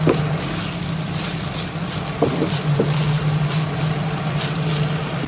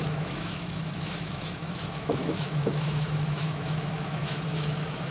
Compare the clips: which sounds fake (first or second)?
second